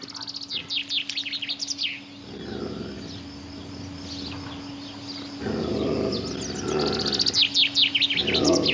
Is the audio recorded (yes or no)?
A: yes